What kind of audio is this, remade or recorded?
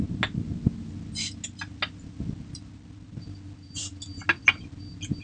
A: recorded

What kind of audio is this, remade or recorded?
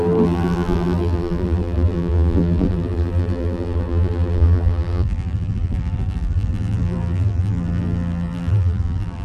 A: remade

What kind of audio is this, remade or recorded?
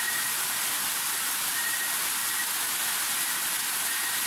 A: recorded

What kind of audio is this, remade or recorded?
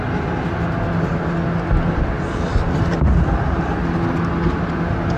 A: recorded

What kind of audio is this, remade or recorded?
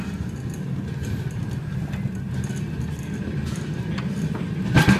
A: recorded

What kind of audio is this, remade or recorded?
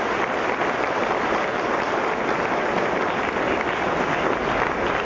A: recorded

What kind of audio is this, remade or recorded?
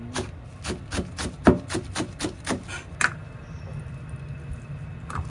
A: recorded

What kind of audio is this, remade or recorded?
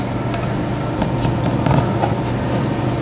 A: remade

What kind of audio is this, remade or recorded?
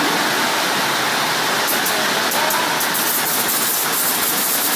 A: recorded